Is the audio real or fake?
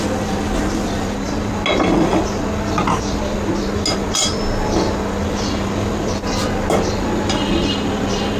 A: real